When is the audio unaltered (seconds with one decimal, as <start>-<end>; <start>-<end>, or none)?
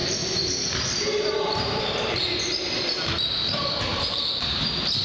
1.8-3.9; 4.6-5.0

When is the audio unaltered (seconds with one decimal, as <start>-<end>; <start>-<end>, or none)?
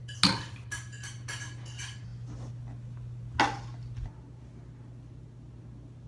0.0-6.1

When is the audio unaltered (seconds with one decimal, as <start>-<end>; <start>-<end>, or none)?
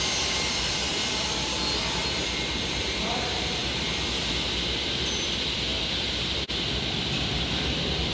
3.6-4.9; 5.7-6.9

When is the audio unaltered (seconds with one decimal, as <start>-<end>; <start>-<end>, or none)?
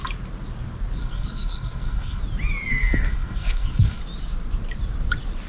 0.0-1.0; 2.2-2.7; 4.0-5.5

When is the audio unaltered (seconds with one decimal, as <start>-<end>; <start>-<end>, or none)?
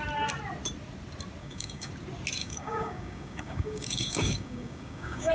0.0-1.4; 1.9-2.4